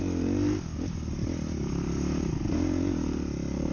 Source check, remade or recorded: recorded